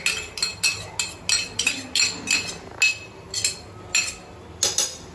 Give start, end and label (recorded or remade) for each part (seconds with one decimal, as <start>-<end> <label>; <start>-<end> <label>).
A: 0.0-5.1 recorded